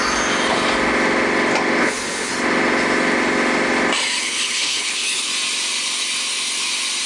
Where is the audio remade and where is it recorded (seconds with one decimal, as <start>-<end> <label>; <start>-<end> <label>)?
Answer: 0.0-1.8 recorded; 1.8-2.3 remade; 2.3-4.2 recorded; 4.2-5.3 remade; 5.3-7.1 recorded